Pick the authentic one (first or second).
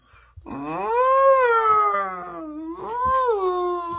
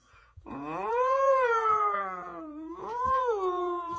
first